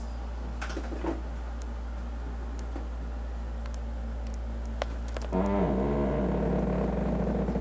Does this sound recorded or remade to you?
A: recorded